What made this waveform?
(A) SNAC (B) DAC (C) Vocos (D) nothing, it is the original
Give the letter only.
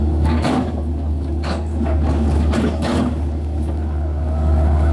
B